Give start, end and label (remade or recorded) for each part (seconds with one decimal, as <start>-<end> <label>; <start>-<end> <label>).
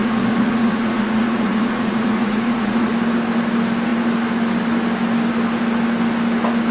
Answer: 0.0-2.9 remade; 2.9-6.7 recorded